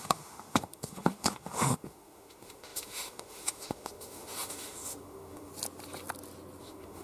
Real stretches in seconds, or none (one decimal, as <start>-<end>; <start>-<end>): 5.5-6.6